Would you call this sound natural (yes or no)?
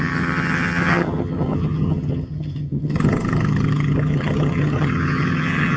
no